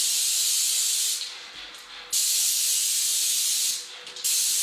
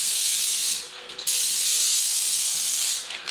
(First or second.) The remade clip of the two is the second